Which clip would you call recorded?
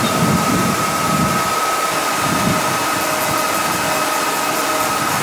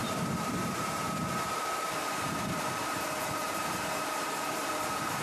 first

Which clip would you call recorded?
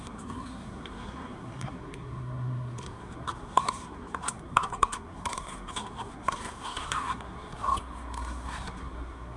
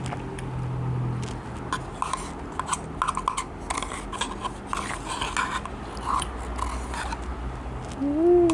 second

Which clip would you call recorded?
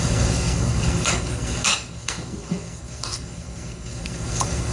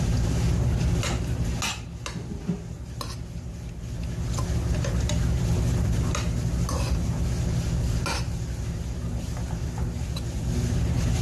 second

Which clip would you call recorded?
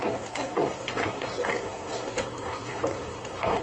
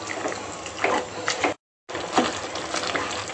second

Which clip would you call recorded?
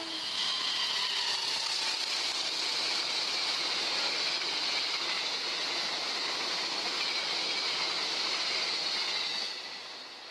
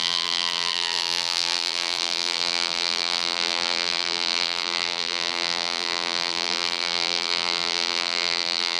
first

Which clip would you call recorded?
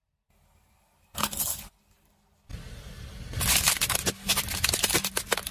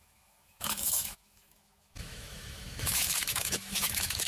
first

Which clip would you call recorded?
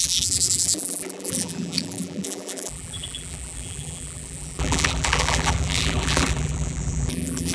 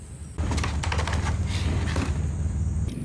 second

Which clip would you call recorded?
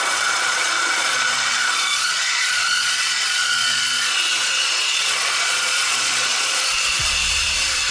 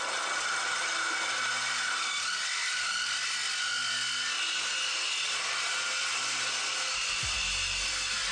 second